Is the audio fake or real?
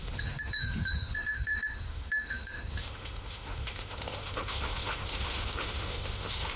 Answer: fake